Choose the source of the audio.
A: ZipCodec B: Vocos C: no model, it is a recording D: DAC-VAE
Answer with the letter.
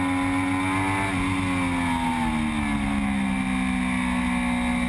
C